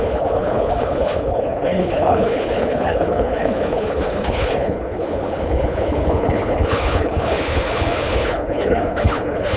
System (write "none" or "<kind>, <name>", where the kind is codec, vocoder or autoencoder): codec, HILCodec